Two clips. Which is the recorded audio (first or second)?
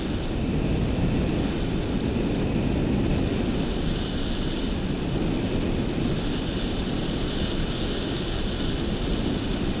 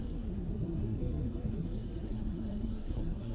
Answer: first